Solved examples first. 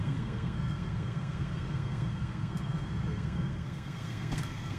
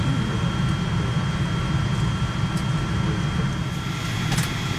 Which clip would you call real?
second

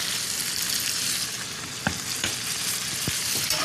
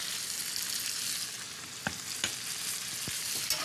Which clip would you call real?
second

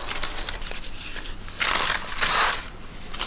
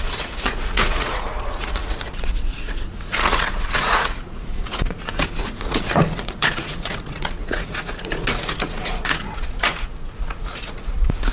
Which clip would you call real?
first